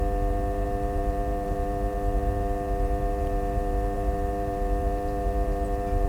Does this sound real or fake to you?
fake